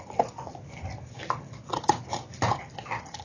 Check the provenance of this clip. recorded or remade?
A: recorded